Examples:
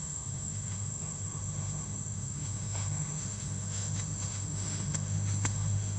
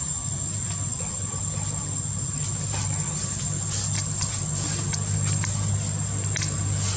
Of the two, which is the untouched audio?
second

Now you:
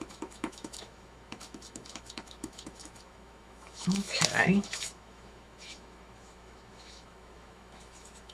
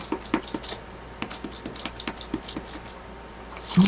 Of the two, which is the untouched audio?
second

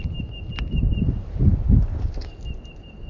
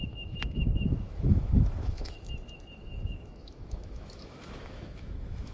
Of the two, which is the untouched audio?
first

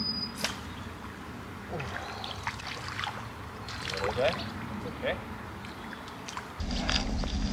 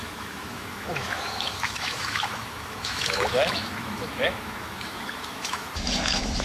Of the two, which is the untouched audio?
first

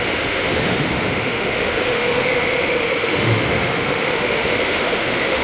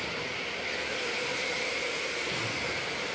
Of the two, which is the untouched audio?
second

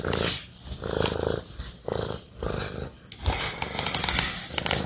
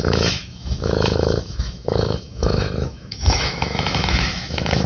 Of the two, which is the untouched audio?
first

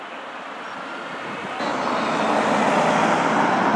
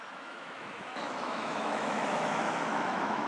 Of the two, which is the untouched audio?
first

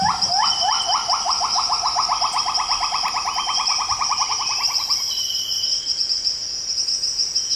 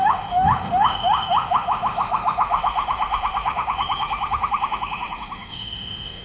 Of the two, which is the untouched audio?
first